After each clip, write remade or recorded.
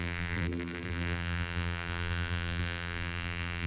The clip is remade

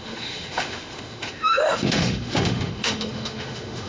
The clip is remade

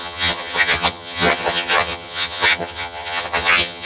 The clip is remade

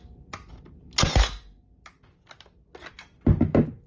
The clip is recorded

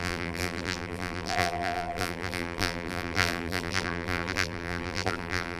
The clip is remade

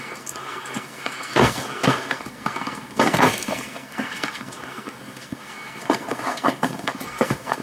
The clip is remade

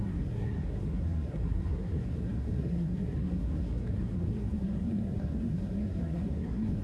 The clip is remade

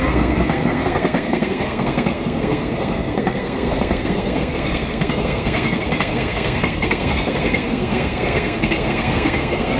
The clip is remade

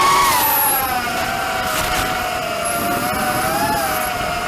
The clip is recorded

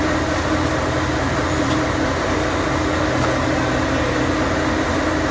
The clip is recorded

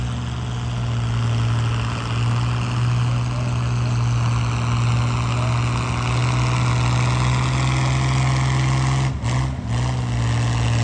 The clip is recorded